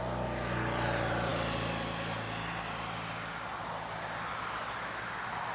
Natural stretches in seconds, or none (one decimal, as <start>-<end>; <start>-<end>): 0.0-5.5